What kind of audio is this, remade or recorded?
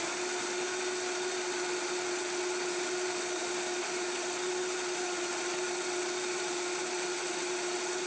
recorded